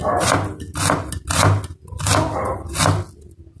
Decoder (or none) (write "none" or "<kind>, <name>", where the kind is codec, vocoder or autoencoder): none